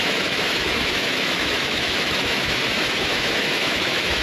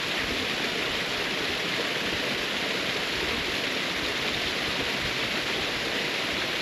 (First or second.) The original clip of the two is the second